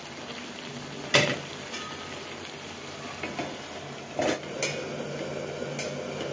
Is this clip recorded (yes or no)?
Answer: yes